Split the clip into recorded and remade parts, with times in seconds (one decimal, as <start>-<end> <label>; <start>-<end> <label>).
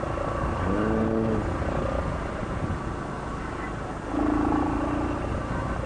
0.0-5.9 recorded